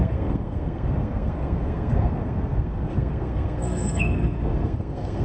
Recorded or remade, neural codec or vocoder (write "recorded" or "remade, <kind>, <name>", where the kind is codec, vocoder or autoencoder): remade, codec, SNAC